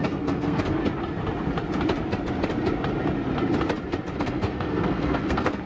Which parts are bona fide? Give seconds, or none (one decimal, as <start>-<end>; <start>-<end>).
0.8-4.2

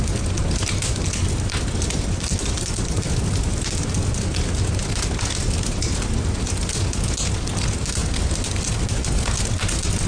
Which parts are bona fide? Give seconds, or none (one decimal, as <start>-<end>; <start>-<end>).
0.0-10.1

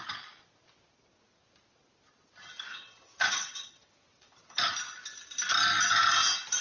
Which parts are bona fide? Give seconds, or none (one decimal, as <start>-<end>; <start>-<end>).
0.0-2.7; 4.3-6.6

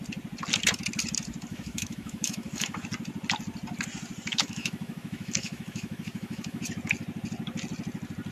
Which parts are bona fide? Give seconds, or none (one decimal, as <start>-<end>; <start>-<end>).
0.0-1.5; 2.8-4.3; 6.6-8.3

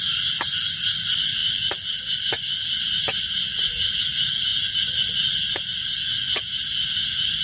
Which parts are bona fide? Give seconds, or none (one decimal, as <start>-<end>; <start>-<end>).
0.0-7.4

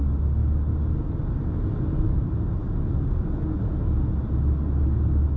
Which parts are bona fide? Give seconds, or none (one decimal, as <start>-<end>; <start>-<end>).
0.0-5.4